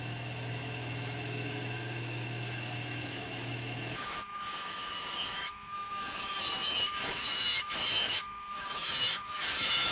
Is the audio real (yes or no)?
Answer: no